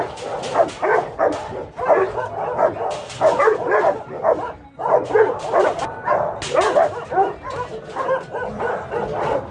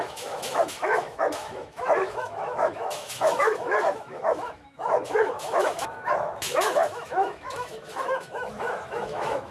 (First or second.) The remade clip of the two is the second